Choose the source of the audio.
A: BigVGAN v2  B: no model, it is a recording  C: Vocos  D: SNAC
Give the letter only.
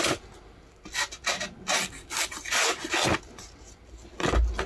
B